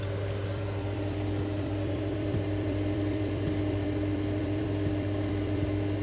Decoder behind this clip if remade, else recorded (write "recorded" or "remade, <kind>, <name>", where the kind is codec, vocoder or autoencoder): remade, vocoder, BigVGAN v2